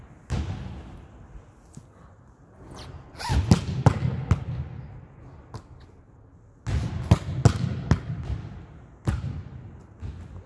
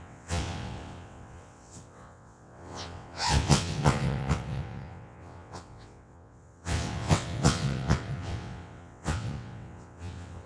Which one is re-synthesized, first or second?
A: second